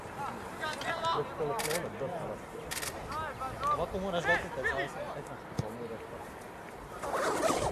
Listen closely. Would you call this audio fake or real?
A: real